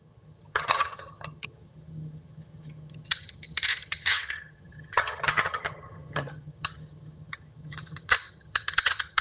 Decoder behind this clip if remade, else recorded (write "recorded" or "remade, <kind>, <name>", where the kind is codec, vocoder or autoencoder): remade, vocoder, HiFi-GAN